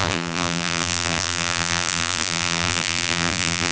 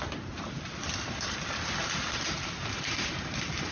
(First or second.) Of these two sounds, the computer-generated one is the first